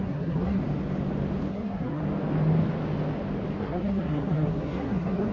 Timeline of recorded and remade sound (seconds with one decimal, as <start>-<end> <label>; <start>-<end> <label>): 0.0-0.6 remade; 0.6-1.5 recorded; 1.5-2.0 remade; 2.0-3.6 recorded; 3.6-5.3 remade